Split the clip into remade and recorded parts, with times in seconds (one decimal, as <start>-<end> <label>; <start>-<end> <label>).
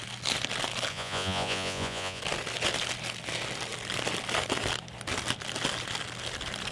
0.0-0.9 recorded; 0.9-2.2 remade; 2.2-6.7 recorded